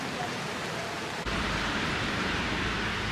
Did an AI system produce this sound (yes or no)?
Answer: yes